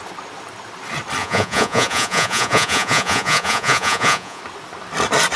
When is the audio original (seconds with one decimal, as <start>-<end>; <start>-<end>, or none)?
0.0-1.2; 4.4-5.4